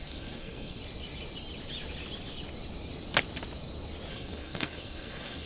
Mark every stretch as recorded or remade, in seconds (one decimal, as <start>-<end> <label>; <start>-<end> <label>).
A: 0.0-0.8 remade; 0.8-4.1 recorded; 4.1-5.5 remade